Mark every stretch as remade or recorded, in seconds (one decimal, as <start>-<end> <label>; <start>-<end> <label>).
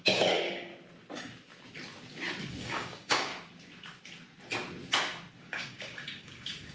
0.0-0.7 remade; 0.7-2.5 recorded; 2.5-3.3 remade; 3.3-5.4 recorded; 5.4-6.7 remade